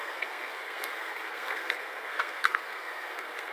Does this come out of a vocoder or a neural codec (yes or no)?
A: yes